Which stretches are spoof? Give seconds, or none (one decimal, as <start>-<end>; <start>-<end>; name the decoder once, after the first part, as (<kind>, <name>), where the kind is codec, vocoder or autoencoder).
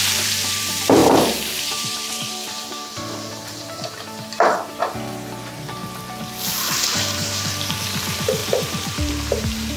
0.0-5.8 (vocoder, BigVGAN v2); 6.5-9.8